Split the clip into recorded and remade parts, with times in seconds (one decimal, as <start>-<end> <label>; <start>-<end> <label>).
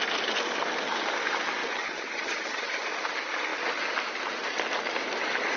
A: 0.0-1.6 recorded; 1.6-2.8 remade; 2.8-5.6 recorded